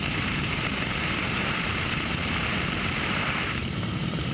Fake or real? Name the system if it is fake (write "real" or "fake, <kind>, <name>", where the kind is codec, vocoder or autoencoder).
fake, vocoder, BigVGAN v2